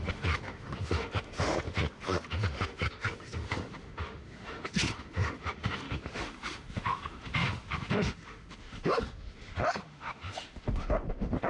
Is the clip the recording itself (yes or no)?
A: no